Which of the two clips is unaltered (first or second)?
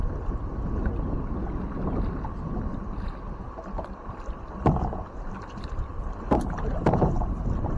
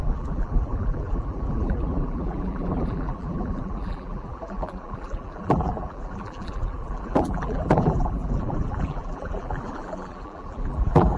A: first